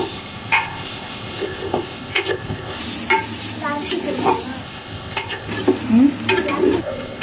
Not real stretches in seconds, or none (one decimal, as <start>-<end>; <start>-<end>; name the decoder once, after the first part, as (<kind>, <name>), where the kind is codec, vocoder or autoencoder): 0.0-2.8 (codec, ZipCodec); 4.6-5.5; 6.8-7.2